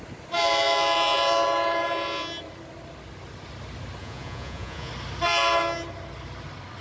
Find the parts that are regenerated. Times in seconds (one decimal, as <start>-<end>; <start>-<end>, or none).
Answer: 4.0-4.9